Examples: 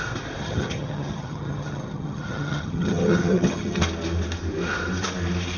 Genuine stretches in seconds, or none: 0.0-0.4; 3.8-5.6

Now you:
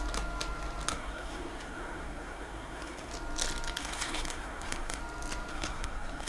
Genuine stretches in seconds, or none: 0.0-0.9; 3.1-3.8; 5.0-5.5

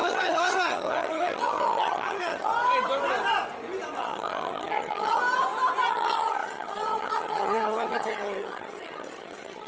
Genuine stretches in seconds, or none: 2.5-4.0; 5.2-5.9

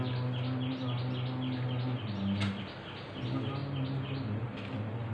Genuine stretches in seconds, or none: 0.0-5.1

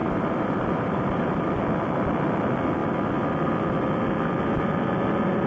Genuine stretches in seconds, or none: 1.5-5.5

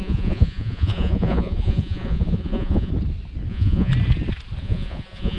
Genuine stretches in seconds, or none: 2.9-3.5; 3.9-4.6

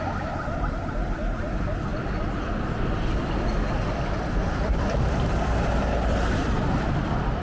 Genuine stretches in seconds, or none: 0.0-7.4